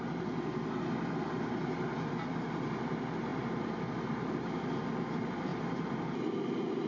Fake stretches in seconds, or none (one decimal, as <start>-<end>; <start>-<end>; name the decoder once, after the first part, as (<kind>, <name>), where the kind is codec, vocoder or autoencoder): none